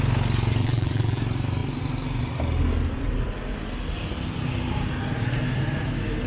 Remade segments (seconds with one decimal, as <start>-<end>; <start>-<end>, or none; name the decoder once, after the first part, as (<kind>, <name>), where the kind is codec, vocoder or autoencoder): 0.6-1.2 (vocoder, BigVGAN v2)